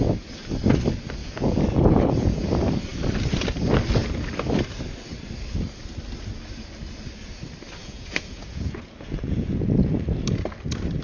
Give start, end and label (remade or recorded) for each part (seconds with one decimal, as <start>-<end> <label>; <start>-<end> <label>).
0.0-1.2 recorded; 1.2-2.4 remade; 2.4-7.8 recorded; 7.8-9.9 remade; 9.9-11.0 recorded